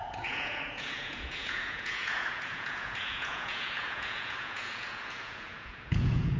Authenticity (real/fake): fake